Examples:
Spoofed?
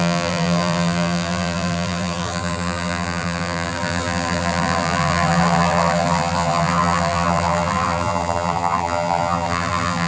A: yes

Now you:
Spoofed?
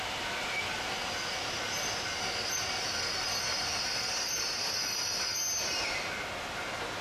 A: no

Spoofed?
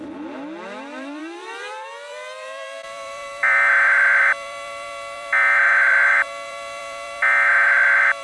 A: yes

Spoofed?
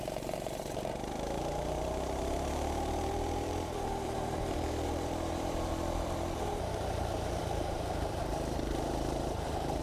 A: yes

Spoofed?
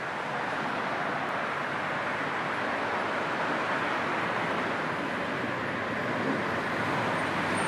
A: no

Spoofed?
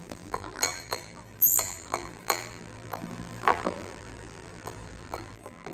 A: yes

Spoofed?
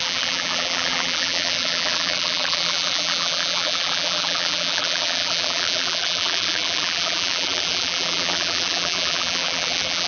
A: yes